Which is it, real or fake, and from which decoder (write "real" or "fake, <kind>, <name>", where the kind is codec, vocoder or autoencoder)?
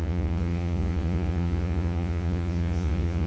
fake, vocoder, Vocos